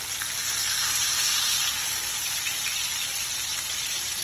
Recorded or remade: recorded